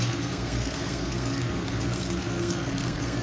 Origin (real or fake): fake